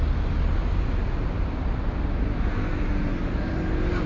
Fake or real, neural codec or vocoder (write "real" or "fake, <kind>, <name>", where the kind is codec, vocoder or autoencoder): real